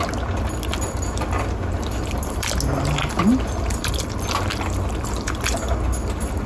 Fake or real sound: real